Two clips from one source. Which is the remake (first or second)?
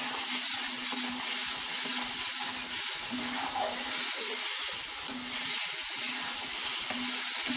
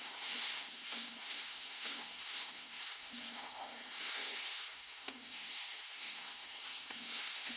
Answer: second